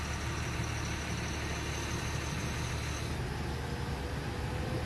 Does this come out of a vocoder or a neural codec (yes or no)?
no